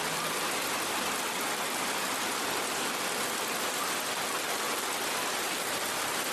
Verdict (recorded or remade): recorded